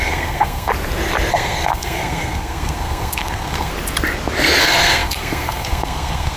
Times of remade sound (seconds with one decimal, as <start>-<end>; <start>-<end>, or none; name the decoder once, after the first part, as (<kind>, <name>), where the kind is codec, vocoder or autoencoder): 0.0-0.7 (codec, SNAC); 1.3-3.7; 4.6-6.4